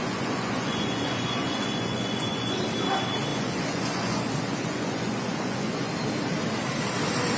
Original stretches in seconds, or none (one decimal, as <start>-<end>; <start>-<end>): 2.6-3.3; 5.9-7.4